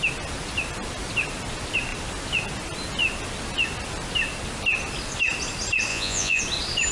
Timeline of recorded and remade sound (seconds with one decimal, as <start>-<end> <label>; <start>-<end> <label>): 0.0-5.9 recorded; 5.9-6.4 remade; 6.4-6.9 recorded